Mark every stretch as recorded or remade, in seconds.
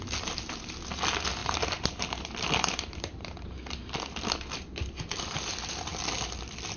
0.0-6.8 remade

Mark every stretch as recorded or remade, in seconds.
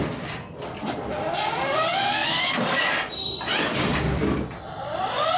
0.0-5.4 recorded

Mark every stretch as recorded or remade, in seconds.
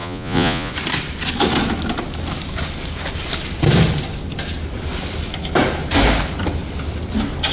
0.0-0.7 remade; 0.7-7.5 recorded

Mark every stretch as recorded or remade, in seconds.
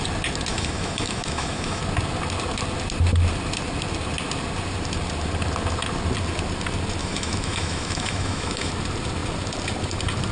0.0-0.5 recorded; 0.5-1.8 remade; 1.8-7.0 recorded; 7.0-8.7 remade; 8.7-10.3 recorded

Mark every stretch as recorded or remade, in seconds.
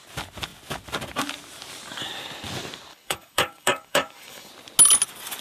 0.0-2.9 recorded; 2.9-4.5 remade; 4.5-5.4 recorded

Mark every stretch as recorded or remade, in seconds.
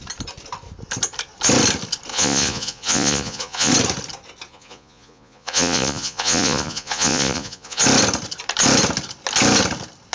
0.0-2.1 recorded; 2.1-3.7 remade; 3.7-4.5 recorded; 4.5-7.8 remade; 7.8-10.1 recorded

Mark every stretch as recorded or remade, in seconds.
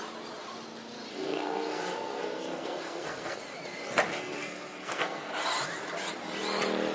0.0-1.1 recorded; 1.1-3.4 remade; 3.4-4.1 recorded; 4.1-5.3 remade; 5.3-6.9 recorded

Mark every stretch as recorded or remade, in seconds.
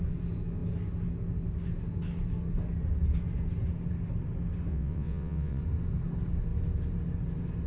0.0-4.7 recorded; 4.7-5.6 remade; 5.6-7.7 recorded